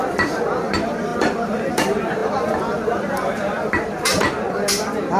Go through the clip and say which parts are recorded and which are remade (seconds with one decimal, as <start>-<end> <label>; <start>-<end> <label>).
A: 0.0-5.2 remade